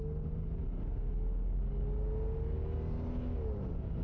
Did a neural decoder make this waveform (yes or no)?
no